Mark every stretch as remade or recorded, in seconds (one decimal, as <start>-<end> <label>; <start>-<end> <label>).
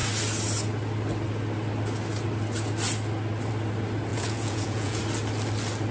0.0-4.1 recorded; 4.1-5.0 remade; 5.0-5.9 recorded